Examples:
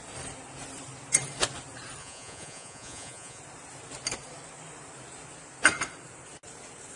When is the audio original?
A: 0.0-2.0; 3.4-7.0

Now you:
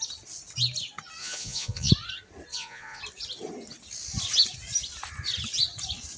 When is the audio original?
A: 0.0-1.2; 1.9-2.5; 3.0-6.2

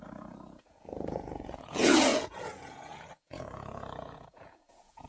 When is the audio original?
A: none

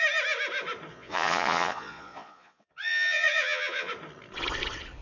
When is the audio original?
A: 0.0-0.9; 3.9-5.0

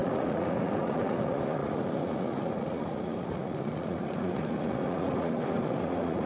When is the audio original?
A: none

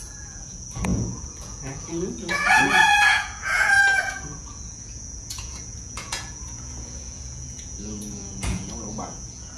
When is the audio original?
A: none